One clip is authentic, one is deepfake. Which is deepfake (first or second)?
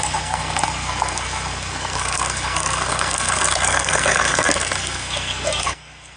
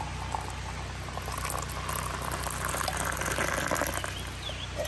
first